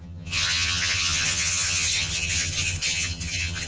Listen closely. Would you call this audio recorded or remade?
remade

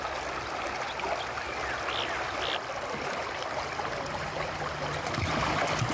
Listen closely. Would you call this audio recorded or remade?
recorded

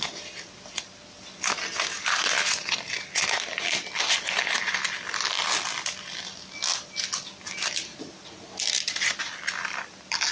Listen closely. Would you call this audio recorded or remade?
recorded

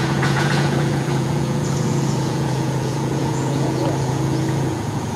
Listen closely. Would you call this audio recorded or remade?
remade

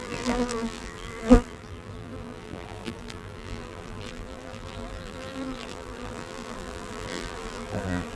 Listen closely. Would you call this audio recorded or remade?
remade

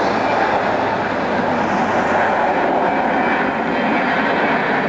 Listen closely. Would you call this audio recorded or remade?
recorded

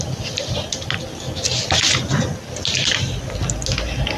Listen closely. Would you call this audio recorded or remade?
recorded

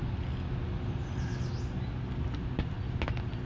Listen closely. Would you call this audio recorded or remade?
recorded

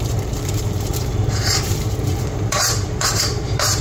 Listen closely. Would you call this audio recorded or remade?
remade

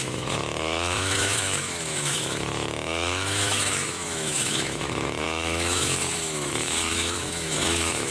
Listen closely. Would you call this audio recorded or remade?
remade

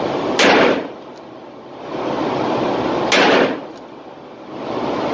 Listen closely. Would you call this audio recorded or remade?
recorded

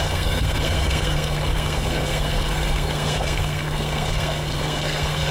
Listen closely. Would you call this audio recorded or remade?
remade